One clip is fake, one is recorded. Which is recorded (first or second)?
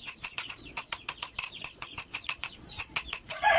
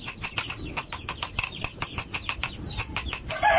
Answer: second